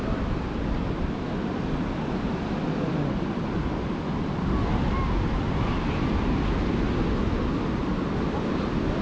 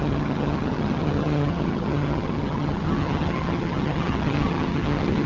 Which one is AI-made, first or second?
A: second